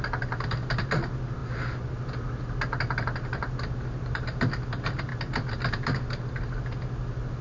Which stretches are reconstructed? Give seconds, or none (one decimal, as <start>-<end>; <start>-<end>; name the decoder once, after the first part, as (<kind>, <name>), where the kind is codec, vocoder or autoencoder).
none